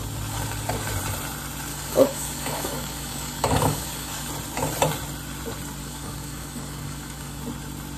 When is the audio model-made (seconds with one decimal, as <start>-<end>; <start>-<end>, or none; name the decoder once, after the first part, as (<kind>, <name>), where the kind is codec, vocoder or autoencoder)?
1.7-4.3 (codec, DAC); 5.8-7.4